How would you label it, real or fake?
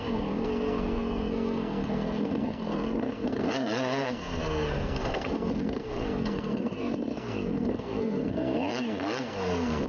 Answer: fake